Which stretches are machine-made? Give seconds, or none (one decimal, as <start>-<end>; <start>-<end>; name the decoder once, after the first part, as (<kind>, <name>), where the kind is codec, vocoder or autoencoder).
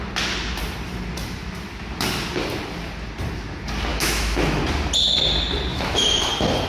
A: 3.9-4.6 (autoencoder, DAC-VAE); 5.7-6.3